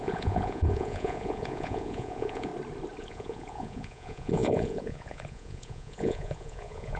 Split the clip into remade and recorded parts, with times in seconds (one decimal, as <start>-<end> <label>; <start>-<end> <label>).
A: 0.0-2.5 remade; 2.5-3.0 recorded; 3.0-7.0 remade